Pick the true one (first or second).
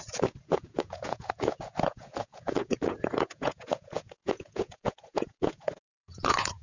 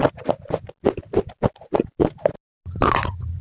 second